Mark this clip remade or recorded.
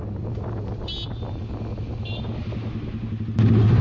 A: recorded